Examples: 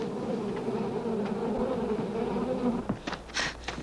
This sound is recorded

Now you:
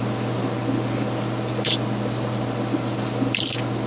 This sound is recorded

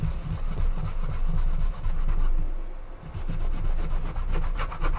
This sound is recorded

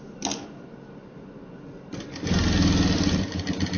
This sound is recorded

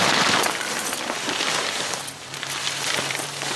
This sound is remade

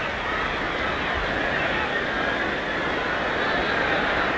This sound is recorded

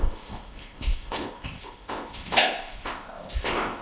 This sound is remade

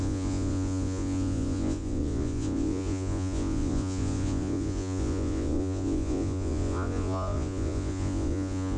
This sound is remade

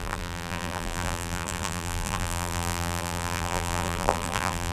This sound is remade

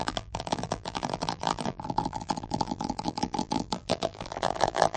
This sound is remade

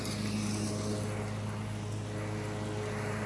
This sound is recorded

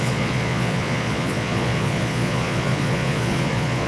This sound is remade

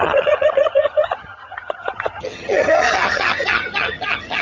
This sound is remade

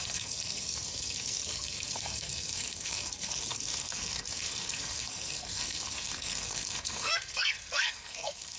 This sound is remade